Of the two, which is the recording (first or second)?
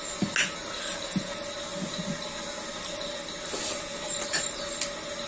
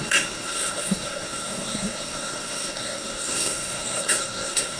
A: first